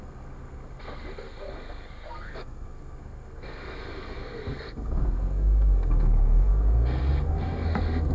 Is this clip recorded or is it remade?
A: remade